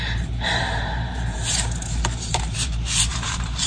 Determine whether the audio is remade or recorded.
remade